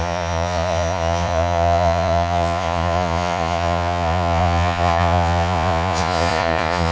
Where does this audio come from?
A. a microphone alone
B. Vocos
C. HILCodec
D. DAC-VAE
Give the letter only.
B